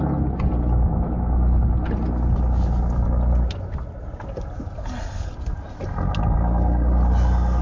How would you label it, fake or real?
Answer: real